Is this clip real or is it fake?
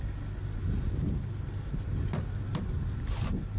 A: real